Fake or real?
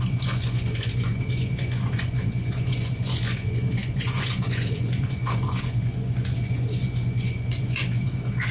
fake